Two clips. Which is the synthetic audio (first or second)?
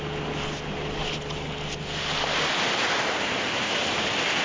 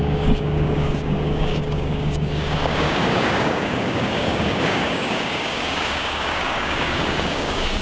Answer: second